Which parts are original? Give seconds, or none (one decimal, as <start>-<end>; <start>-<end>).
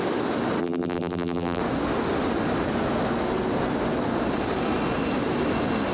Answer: 0.0-0.6; 1.6-5.9